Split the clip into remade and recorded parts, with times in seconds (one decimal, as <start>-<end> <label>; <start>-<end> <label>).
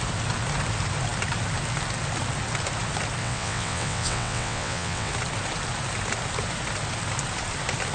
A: 0.0-3.2 recorded; 3.2-5.1 remade; 5.1-7.9 recorded